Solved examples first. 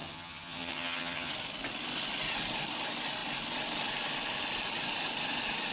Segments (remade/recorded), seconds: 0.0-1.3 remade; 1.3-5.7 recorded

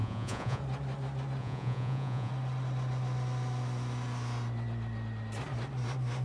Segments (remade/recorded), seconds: 0.0-0.6 remade; 0.6-1.4 recorded; 1.4-2.3 remade; 2.3-6.2 recorded

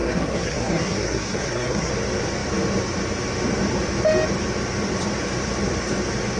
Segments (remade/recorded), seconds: 0.0-1.9 remade; 1.9-6.4 recorded

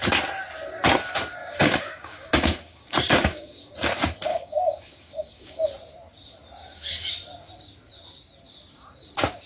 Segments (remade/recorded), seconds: 0.0-1.4 recorded; 1.4-3.8 remade; 3.8-4.3 recorded; 4.3-5.6 remade; 5.6-6.6 recorded; 6.6-7.1 remade; 7.1-9.5 recorded